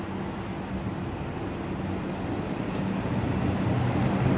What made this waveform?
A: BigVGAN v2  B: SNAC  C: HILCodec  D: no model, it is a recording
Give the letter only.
D